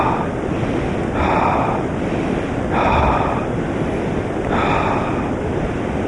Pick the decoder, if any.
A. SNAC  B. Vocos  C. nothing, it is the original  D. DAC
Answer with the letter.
C